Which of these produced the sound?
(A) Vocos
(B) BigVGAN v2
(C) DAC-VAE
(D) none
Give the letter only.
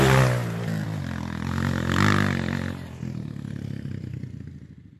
D